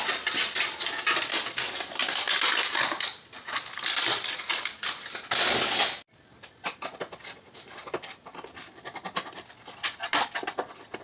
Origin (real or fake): real